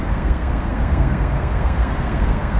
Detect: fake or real fake